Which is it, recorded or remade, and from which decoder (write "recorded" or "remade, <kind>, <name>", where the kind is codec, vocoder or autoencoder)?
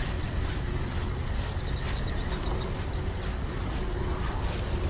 recorded